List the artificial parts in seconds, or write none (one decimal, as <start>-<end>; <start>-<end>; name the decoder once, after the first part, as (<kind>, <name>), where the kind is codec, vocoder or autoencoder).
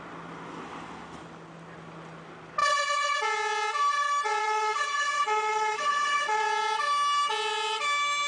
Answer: 2.6-3.2 (vocoder, Vocos); 4.4-6.4